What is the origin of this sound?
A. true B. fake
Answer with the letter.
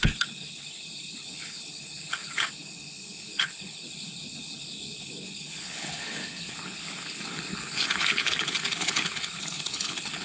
B